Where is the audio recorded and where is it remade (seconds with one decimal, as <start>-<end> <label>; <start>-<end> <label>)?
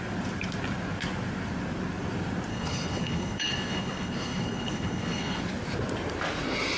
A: 0.0-2.5 recorded; 2.5-5.4 remade; 5.4-6.8 recorded